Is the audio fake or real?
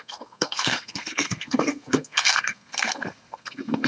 fake